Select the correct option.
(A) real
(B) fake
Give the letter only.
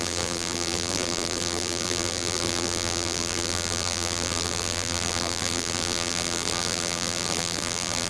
B